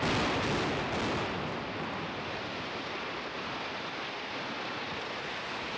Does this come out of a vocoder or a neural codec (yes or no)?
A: no